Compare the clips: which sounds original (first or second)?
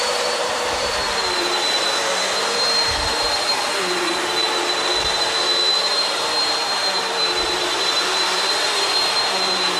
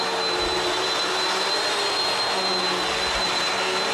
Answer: second